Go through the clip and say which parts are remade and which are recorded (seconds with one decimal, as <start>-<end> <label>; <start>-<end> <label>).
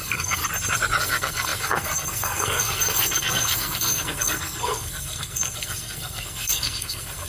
0.0-0.4 remade; 0.4-1.0 recorded; 1.0-7.3 remade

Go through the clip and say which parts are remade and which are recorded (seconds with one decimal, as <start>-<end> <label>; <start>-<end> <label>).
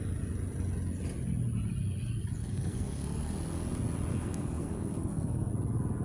0.0-2.4 recorded; 2.4-3.3 remade; 3.3-4.1 recorded; 4.1-5.5 remade; 5.5-6.0 recorded